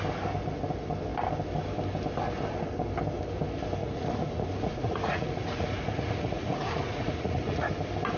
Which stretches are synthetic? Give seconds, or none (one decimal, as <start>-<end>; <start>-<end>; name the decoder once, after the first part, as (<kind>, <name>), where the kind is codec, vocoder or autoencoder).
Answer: 3.8-7.7 (vocoder, Vocos)